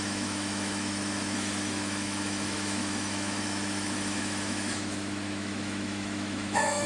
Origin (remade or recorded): remade